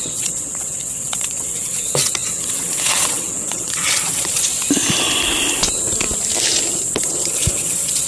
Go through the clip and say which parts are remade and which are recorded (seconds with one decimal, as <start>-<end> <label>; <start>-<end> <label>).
0.0-4.5 remade; 4.5-6.9 recorded; 6.9-8.1 remade